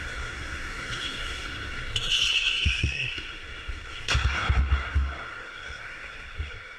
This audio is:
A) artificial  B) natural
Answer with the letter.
A